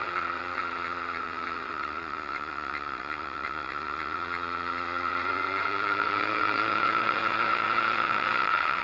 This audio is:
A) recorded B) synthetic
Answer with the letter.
B